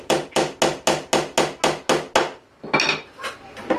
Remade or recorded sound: recorded